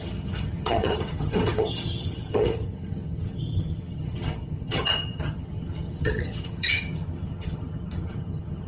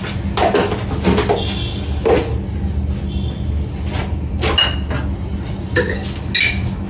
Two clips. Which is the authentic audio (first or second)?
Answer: second